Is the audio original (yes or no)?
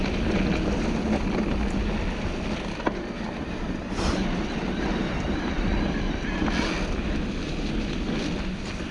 yes